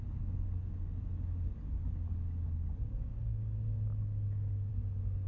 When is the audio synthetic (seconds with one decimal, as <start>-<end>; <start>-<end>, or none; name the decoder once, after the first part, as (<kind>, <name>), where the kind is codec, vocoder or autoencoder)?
none